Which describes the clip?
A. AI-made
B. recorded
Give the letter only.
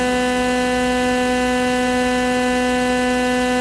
B